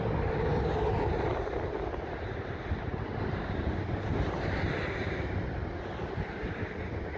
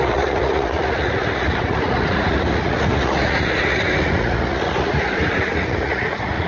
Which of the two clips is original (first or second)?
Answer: first